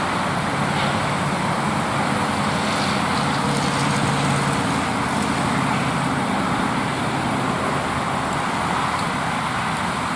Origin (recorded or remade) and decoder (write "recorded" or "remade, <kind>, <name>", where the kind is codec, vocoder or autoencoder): recorded